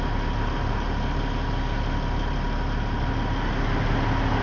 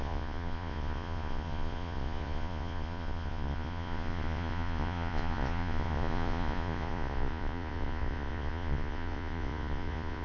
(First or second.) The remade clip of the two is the second